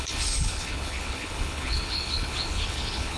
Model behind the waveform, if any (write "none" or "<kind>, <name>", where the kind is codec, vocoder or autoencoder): codec, HILCodec